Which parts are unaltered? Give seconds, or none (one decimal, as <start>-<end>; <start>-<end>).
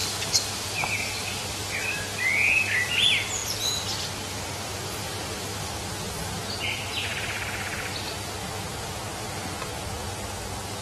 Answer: 0.0-3.4; 5.7-10.8